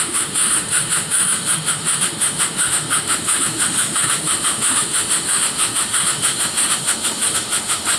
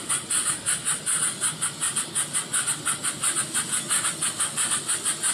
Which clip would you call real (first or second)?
second